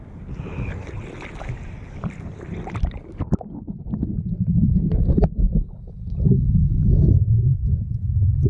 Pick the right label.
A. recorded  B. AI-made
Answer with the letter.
A